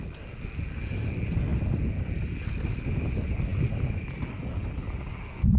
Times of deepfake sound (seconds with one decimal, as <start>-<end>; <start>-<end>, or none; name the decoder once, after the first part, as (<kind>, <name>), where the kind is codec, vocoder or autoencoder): 3.5-4.4 (vocoder, BigVGAN v2)